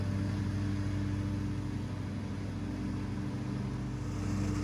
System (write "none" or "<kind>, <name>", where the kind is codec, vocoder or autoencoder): none